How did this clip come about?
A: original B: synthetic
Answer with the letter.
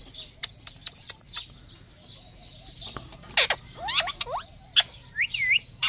A